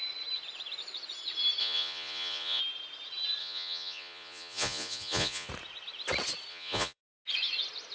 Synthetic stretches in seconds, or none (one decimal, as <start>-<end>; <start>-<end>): 1.6-2.6; 3.4-5.5; 6.5-7.0